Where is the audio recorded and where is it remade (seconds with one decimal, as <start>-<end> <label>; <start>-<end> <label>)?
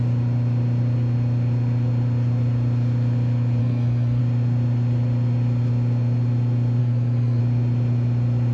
0.0-3.6 recorded; 3.6-4.2 remade; 4.2-6.8 recorded; 6.8-7.4 remade; 7.4-8.5 recorded